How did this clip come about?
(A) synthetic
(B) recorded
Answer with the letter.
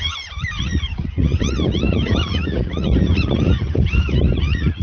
A